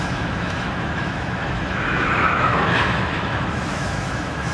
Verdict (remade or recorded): remade